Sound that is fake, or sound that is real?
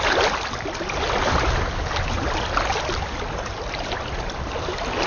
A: real